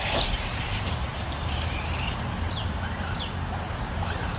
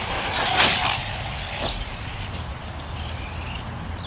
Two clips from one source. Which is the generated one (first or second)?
first